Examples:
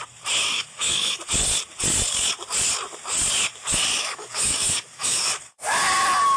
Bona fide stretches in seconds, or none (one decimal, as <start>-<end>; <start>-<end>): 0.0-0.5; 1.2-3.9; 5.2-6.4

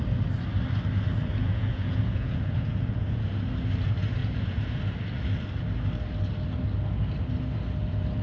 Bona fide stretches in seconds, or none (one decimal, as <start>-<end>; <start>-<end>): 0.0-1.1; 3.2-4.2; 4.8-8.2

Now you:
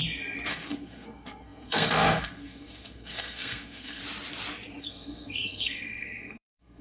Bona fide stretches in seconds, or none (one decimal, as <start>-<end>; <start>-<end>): 0.0-0.5; 4.0-4.8

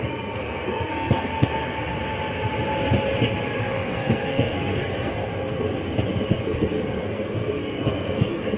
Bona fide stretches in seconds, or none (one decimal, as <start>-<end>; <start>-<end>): 1.9-3.6; 5.3-6.3

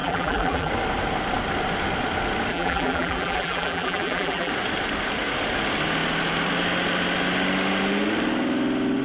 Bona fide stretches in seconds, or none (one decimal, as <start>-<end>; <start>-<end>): 0.7-2.5; 4.5-9.0

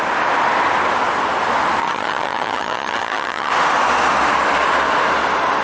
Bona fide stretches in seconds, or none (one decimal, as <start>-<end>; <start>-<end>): 0.0-1.8; 3.5-5.6